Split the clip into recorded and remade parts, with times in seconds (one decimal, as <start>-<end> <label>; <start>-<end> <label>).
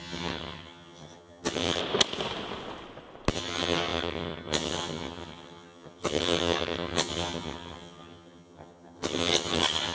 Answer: 0.0-1.8 remade; 1.8-3.3 recorded; 3.3-9.9 remade